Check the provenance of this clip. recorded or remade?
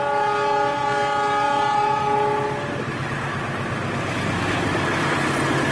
recorded